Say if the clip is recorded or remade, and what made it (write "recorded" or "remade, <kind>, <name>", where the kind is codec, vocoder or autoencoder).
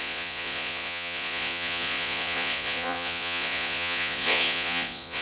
remade, vocoder, Vocos